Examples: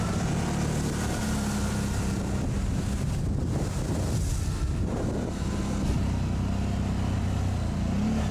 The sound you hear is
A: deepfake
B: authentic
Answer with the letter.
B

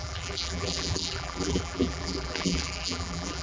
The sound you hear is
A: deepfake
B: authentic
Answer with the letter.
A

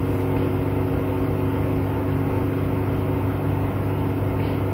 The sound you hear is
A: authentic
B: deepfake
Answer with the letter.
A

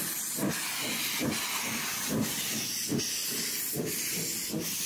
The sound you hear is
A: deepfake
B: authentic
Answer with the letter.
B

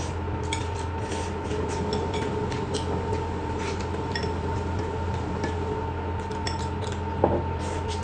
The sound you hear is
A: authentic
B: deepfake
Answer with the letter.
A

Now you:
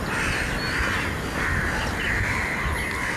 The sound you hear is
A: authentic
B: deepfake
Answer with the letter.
A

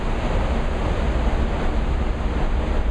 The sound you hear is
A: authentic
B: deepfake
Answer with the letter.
A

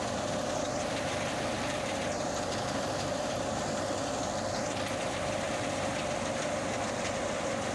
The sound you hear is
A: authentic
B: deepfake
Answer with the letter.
B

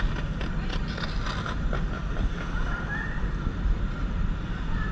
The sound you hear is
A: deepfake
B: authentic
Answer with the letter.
B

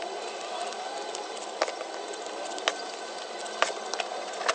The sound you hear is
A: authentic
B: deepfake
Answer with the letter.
A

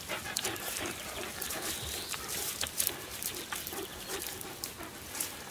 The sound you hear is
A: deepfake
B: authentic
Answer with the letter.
B